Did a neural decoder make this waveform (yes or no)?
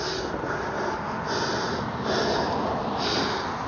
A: no